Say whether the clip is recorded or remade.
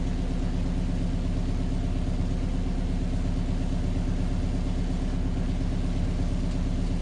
recorded